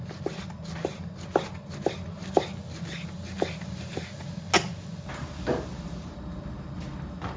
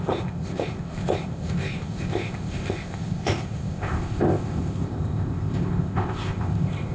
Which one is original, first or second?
first